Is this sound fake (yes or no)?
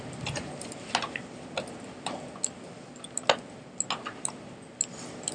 no